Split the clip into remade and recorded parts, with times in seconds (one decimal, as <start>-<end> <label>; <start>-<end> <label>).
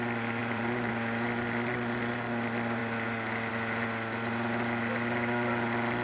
0.0-0.4 recorded; 0.4-0.9 remade; 0.9-6.0 recorded